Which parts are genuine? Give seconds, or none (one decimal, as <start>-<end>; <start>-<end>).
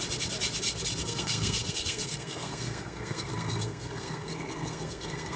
0.0-1.0